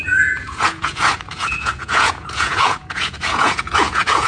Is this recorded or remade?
remade